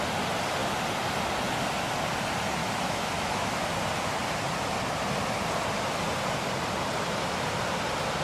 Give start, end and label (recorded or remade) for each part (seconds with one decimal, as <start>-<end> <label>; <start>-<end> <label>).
0.0-2.6 recorded; 2.6-3.7 remade; 3.7-8.2 recorded